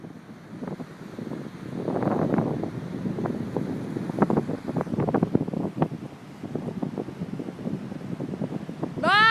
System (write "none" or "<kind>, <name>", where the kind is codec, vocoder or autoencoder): none